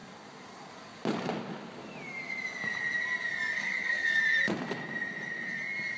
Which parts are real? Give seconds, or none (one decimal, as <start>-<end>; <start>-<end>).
0.0-3.6; 4.2-6.0